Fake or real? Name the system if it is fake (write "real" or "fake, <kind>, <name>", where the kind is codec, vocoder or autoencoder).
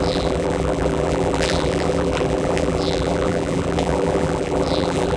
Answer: fake, vocoder, BigVGAN v2